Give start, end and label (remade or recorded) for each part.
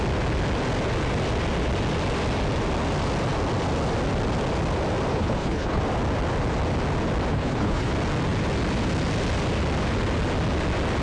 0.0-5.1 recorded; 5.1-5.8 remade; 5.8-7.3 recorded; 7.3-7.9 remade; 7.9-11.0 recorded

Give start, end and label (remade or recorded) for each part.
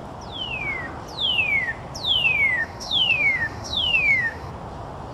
0.0-2.6 recorded; 2.6-4.5 remade; 4.5-5.1 recorded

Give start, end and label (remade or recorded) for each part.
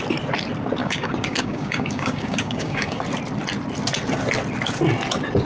0.0-0.8 recorded; 0.8-3.0 remade; 3.0-5.5 recorded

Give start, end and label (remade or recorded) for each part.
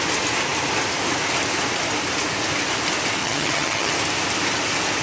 0.0-3.2 recorded; 3.2-3.9 remade; 3.9-5.0 recorded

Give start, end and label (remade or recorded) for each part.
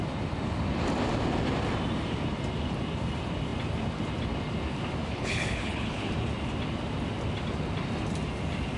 0.0-5.0 recorded; 5.0-6.1 remade; 6.1-8.8 recorded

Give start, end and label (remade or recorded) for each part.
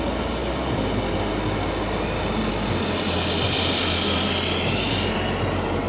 0.0-5.9 recorded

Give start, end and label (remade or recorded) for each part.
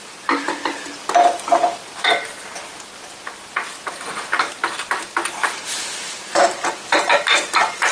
0.0-0.6 remade; 0.6-3.9 recorded; 3.9-4.6 remade; 4.6-5.3 recorded; 5.3-7.9 remade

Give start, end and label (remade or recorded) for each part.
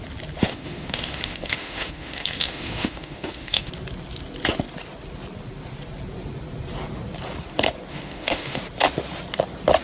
0.0-0.4 recorded; 0.4-3.7 remade; 3.7-7.9 recorded; 7.9-8.6 remade; 8.6-9.8 recorded